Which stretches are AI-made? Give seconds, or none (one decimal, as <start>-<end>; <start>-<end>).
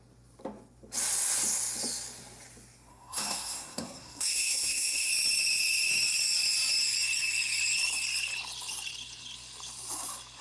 2.9-5.1